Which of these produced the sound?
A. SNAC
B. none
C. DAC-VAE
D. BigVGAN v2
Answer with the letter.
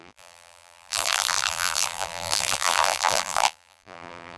D